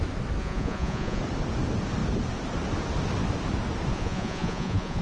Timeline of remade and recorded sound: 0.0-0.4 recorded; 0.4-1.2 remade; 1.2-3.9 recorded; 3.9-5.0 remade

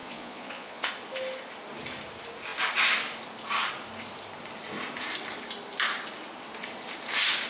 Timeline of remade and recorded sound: 0.0-0.9 remade; 0.9-7.5 recorded

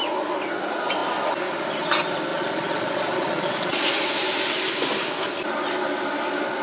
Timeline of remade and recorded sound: 0.0-2.3 recorded; 2.3-3.9 remade; 3.9-6.6 recorded

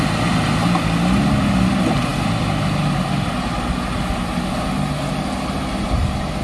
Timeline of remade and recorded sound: 0.0-6.4 recorded